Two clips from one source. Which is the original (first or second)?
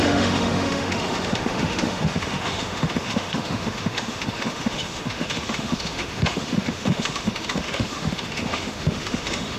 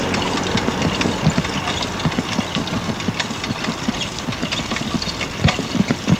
second